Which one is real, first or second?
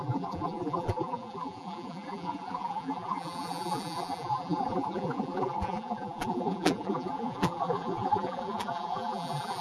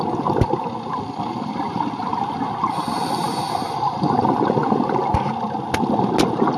second